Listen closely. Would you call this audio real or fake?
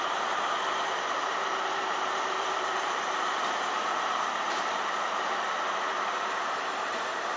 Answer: fake